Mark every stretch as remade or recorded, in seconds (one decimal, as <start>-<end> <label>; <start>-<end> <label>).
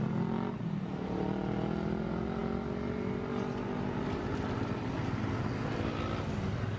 0.0-6.8 recorded